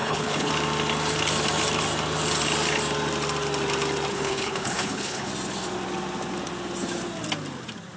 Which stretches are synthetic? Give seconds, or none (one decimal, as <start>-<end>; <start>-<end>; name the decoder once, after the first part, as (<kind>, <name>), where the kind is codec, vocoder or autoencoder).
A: 0.0-0.5 (codec, HILCodec); 4.1-5.3